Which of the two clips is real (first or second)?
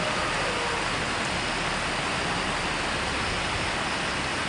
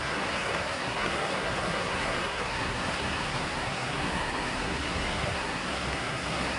first